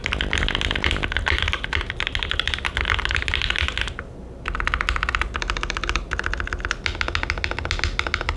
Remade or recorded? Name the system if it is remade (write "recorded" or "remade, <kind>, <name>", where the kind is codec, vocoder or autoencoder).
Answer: recorded